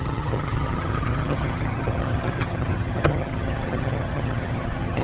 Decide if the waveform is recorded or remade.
remade